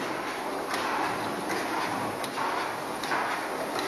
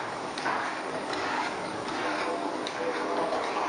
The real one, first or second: first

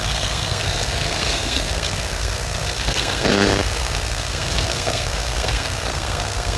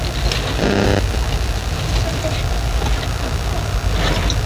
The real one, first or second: second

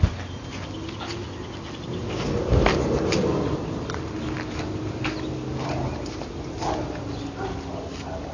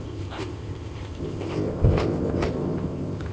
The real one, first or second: first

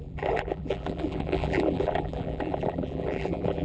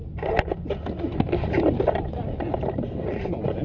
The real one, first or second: second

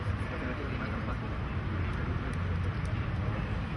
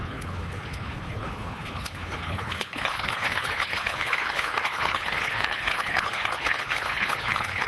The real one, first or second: first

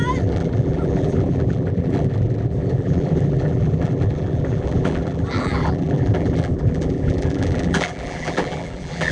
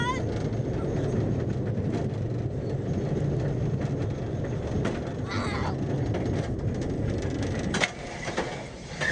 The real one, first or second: second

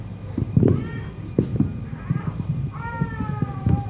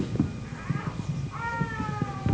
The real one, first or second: second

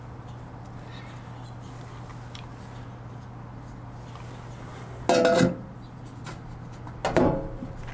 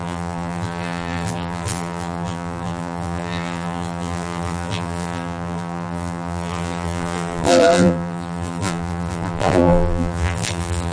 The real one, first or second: first